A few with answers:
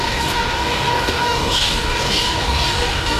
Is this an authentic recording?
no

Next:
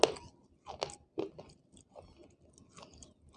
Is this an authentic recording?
yes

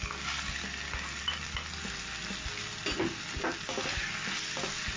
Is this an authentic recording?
yes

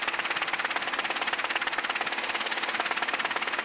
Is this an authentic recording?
yes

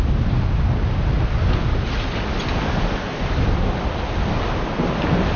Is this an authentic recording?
yes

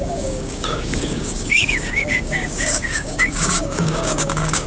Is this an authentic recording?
no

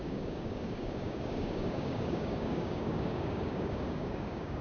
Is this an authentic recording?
no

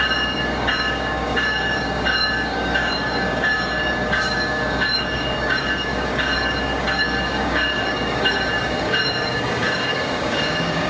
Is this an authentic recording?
no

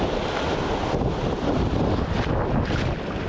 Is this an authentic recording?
yes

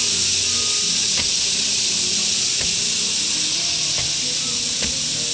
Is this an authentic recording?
yes